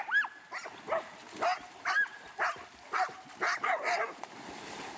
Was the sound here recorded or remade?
recorded